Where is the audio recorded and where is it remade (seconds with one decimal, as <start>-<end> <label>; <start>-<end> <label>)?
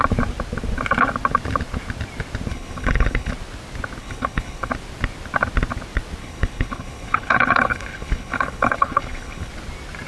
0.0-2.5 recorded; 2.5-3.3 remade; 3.3-4.0 recorded; 4.0-4.7 remade; 4.7-6.2 recorded; 6.2-9.5 remade; 9.5-10.1 recorded